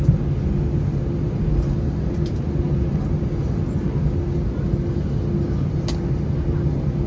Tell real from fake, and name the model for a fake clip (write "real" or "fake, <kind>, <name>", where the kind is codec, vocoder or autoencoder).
real